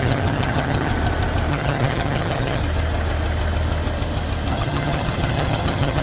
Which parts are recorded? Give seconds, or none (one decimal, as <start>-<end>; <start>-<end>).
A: 0.9-1.5; 2.6-4.5